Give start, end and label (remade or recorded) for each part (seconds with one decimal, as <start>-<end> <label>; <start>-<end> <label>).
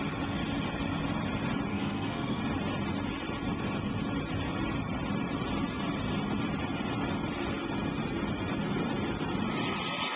0.0-1.7 recorded; 1.7-2.4 remade; 2.4-10.2 recorded